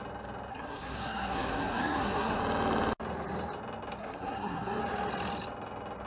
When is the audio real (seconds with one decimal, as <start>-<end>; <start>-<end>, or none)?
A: 0.0-0.5; 2.4-4.0; 4.8-6.1